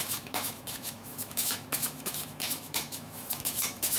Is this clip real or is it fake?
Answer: fake